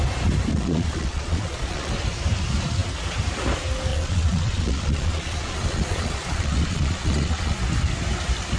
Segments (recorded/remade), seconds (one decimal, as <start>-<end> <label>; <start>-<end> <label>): 0.0-0.5 recorded; 0.5-1.9 remade; 1.9-3.9 recorded; 3.9-7.6 remade; 7.6-8.6 recorded